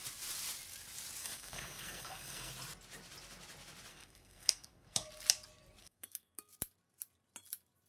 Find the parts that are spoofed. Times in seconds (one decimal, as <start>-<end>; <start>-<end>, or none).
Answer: 1.2-2.5; 3.9-5.1; 5.8-6.5